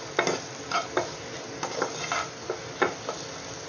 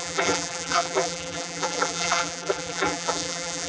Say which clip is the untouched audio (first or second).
first